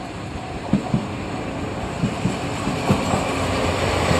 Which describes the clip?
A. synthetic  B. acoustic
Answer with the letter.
B